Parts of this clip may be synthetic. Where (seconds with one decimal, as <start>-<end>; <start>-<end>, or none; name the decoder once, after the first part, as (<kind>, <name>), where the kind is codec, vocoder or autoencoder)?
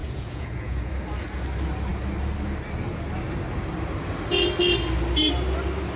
0.0-0.9 (vocoder, Vocos)